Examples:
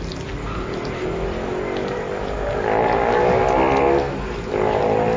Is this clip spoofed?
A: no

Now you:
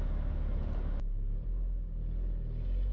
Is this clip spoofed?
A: no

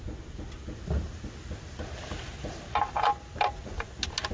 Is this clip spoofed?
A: no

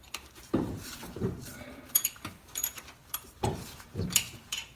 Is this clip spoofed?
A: yes